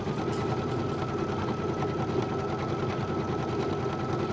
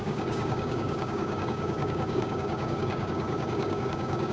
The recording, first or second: first